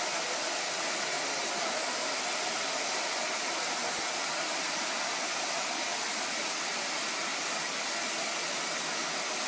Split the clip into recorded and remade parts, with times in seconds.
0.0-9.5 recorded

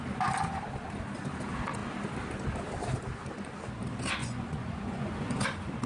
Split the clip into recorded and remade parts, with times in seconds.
0.0-4.2 recorded; 4.2-5.4 remade; 5.4-5.9 recorded

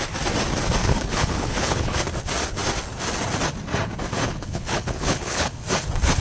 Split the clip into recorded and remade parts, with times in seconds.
0.0-0.8 recorded; 0.8-2.0 remade; 2.0-4.3 recorded; 4.3-5.6 remade; 5.6-6.2 recorded

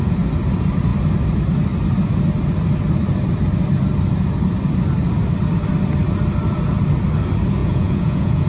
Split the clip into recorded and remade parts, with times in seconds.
0.0-7.6 recorded; 7.6-8.5 remade

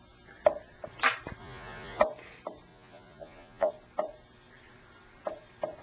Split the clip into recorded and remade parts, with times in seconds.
0.0-1.4 recorded; 1.4-2.0 remade; 2.0-2.7 recorded; 2.7-3.7 remade; 3.7-5.8 recorded

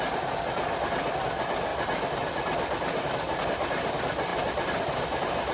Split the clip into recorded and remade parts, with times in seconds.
0.0-5.5 recorded

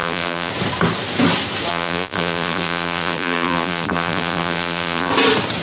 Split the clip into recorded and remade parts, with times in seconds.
0.0-0.5 remade; 0.5-1.7 recorded; 1.7-5.1 remade; 5.1-5.6 recorded

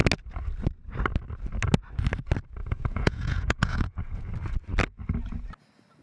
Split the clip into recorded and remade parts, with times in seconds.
0.0-2.6 recorded; 2.6-4.3 remade; 4.3-6.0 recorded